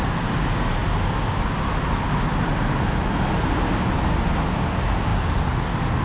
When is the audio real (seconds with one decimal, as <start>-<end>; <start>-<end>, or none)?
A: 0.0-6.0